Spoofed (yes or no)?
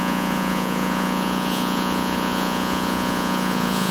yes